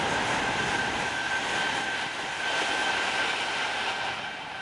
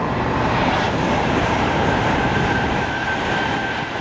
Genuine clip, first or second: first